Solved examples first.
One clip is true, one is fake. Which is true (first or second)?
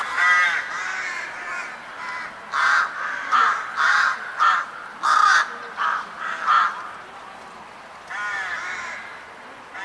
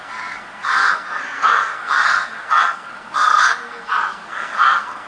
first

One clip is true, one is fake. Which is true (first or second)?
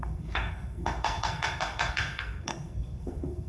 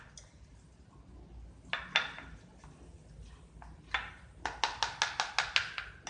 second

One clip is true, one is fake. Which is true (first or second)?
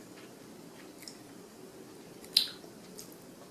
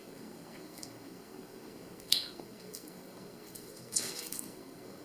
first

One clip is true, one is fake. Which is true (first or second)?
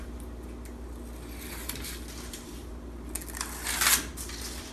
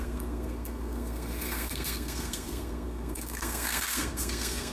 first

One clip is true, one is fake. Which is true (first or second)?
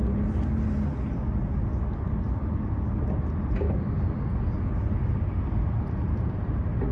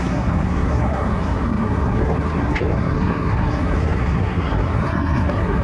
first